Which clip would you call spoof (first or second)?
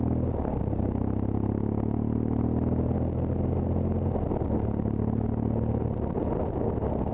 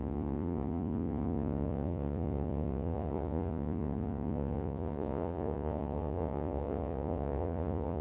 second